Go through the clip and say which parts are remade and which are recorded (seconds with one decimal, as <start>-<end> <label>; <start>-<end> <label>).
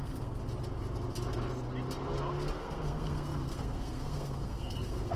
0.0-0.4 remade; 0.4-2.6 recorded; 2.6-5.2 remade